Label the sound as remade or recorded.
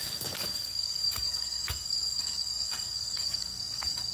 remade